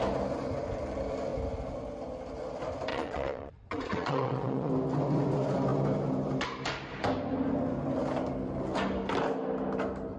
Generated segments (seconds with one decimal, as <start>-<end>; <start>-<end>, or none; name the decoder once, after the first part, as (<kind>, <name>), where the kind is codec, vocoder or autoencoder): 2.9-4.7 (vocoder, Vocos)